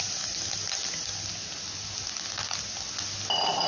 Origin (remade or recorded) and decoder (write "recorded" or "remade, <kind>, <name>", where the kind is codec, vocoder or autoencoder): recorded